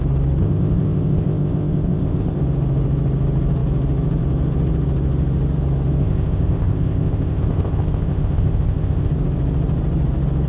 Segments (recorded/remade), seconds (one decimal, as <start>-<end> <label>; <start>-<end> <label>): 0.0-0.4 recorded; 0.4-2.4 remade; 2.4-6.0 recorded; 6.0-9.1 remade; 9.1-10.5 recorded